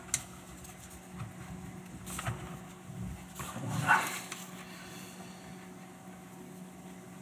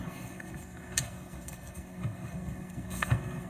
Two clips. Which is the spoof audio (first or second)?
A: second